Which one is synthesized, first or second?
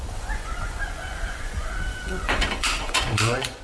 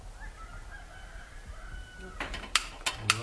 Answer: first